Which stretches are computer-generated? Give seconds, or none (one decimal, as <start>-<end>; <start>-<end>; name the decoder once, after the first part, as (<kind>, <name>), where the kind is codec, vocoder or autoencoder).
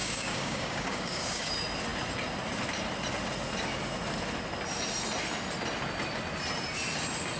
0.0-1.5 (codec, DAC)